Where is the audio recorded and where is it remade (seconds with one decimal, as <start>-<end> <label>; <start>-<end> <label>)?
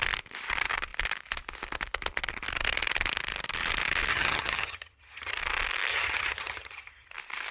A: 0.0-4.1 recorded; 4.1-5.4 remade; 5.4-5.9 recorded; 5.9-7.1 remade; 7.1-7.5 recorded